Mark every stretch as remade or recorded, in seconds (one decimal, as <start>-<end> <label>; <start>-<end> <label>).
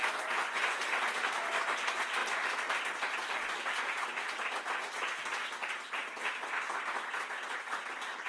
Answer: 0.0-0.8 remade; 0.8-8.3 recorded